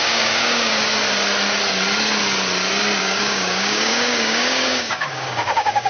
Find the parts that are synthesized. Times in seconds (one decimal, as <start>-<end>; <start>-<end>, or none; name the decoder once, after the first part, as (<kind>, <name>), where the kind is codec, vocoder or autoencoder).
0.0-0.9 (codec, DAC); 3.0-5.9